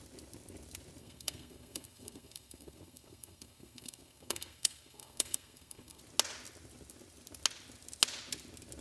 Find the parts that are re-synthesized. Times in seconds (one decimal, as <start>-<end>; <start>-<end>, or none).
1.0-6.0